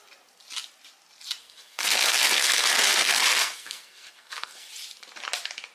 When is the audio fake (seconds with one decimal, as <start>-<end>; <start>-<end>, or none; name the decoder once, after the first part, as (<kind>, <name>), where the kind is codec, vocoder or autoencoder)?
1.4-4.7 (codec, SNAC)